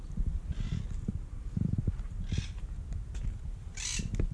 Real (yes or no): yes